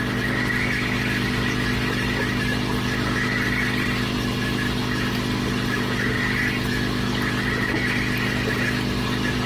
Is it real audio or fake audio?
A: real